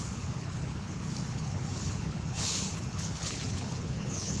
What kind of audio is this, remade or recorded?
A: remade